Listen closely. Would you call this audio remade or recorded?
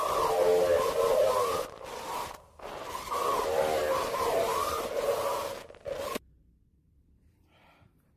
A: recorded